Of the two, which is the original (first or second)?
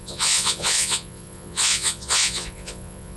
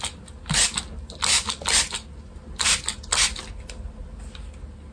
second